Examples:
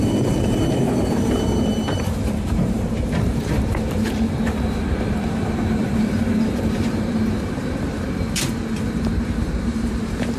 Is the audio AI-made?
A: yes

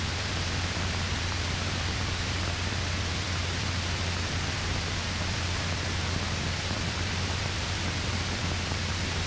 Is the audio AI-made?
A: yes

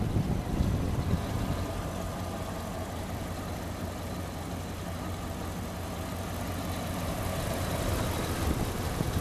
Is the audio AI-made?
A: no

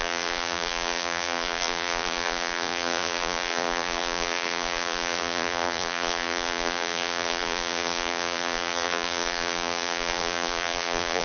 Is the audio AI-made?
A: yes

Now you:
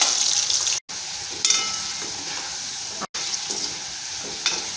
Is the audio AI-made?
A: no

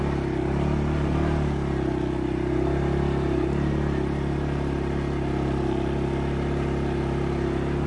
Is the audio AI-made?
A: no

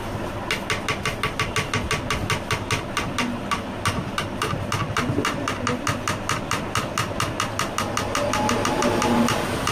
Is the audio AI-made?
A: no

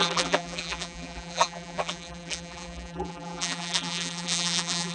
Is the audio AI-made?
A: yes